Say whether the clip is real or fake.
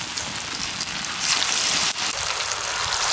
real